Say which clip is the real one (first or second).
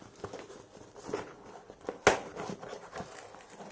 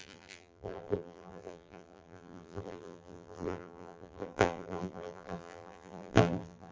first